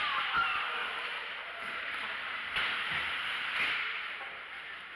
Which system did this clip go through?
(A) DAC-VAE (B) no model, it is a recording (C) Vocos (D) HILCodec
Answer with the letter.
B